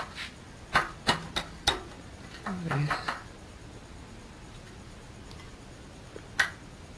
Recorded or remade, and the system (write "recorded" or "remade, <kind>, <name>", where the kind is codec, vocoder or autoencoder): recorded